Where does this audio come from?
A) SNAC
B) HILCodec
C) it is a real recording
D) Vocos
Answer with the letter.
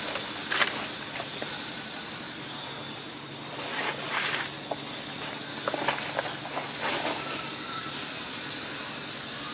C